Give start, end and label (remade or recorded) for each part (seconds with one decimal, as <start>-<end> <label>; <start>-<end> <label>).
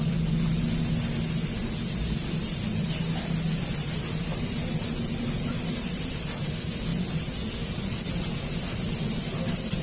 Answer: 0.0-9.8 recorded